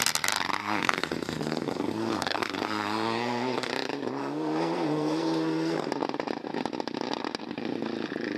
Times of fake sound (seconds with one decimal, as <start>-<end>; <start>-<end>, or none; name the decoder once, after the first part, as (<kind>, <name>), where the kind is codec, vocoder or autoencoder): 0.6-3.7 (codec, SNAC); 4.2-5.9